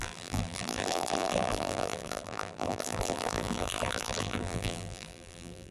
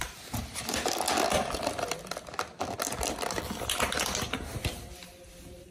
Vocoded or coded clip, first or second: first